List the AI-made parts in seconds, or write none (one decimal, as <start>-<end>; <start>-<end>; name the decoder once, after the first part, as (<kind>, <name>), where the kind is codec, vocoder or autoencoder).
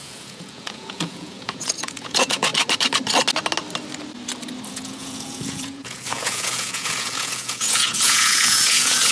0.0-2.5 (vocoder, Vocos); 4.7-9.1